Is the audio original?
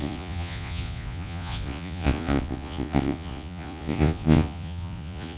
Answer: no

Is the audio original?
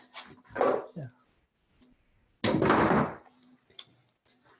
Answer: yes